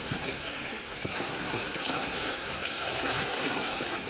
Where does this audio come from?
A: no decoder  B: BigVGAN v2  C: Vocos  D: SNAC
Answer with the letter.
D